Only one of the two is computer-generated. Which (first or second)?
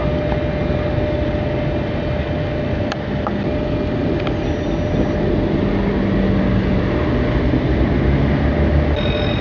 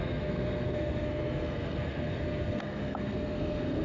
second